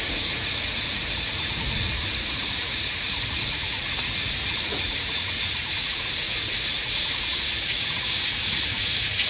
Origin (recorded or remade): remade